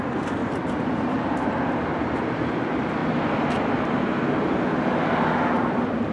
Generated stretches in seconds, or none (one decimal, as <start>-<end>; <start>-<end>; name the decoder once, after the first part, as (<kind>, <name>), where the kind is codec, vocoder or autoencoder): 0.4-2.4 (vocoder, BigVGAN v2)